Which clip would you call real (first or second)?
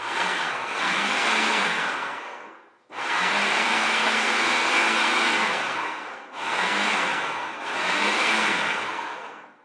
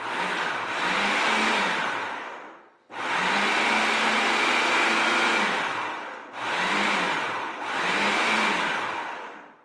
second